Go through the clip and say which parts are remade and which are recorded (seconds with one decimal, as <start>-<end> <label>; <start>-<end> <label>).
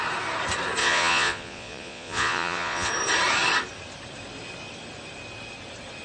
0.0-0.8 recorded; 0.8-2.9 remade; 2.9-6.0 recorded